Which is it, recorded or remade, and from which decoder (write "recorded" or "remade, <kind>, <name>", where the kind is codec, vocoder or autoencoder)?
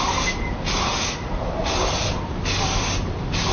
recorded